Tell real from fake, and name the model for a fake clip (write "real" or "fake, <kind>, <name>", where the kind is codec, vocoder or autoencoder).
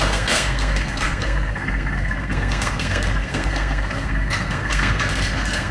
fake, codec, SNAC